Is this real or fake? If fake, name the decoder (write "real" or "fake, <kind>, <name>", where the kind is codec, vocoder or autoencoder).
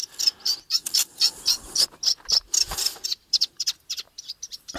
real